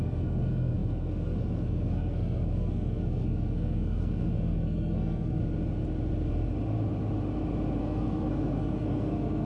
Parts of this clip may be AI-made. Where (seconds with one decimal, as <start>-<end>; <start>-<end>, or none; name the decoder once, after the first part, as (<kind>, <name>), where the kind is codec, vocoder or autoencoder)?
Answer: 0.0-5.4 (codec, SNAC); 7.8-9.5